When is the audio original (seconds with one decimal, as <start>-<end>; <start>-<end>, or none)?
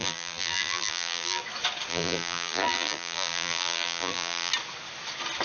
1.4-1.9; 4.5-5.4